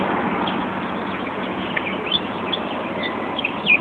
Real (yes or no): yes